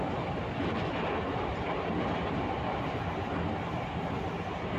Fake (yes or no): no